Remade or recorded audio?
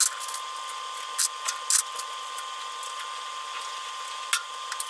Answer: recorded